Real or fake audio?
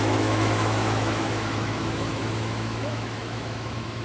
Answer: fake